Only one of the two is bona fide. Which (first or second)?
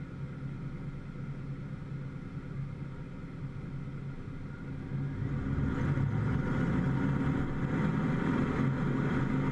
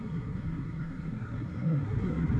first